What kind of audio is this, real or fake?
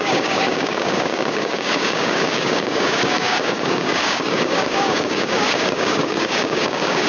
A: fake